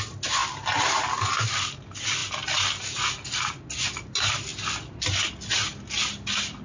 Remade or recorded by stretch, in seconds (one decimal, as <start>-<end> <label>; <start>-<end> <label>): 0.0-6.6 recorded